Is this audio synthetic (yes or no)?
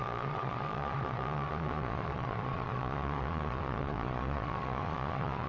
yes